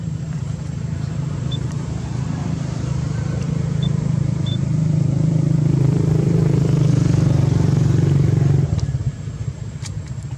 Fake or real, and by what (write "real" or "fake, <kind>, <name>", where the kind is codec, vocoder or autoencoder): fake, vocoder, BigVGAN v2